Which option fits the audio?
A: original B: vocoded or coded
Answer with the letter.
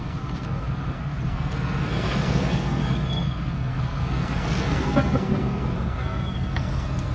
B